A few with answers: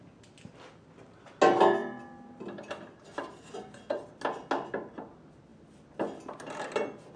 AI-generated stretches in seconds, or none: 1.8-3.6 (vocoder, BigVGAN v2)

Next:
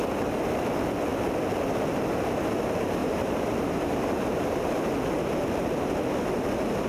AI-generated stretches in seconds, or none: 3.0-4.9 (vocoder, BigVGAN v2)

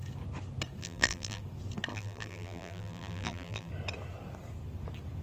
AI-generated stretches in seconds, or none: 0.8-1.4 (vocoder, BigVGAN v2); 1.9-3.7

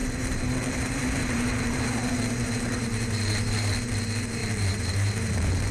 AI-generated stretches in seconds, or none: 0.0-5.7 (vocoder, BigVGAN v2)

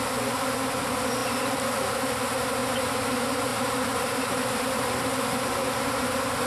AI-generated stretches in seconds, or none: 1.2-2.2 (vocoder, BigVGAN v2); 2.6-3.1; 3.5-5.0

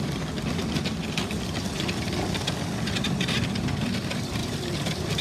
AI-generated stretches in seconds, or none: 0.0-0.9 (vocoder, BigVGAN v2); 4.0-5.2

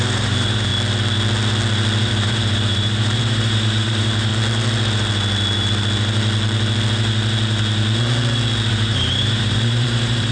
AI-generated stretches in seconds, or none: 0.0-0.7 (vocoder, BigVGAN v2); 2.1-4.3; 8.7-10.3

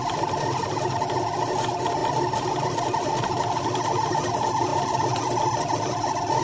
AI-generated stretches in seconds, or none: 0.0-0.6 (vocoder, BigVGAN v2); 2.0-3.1; 4.7-5.6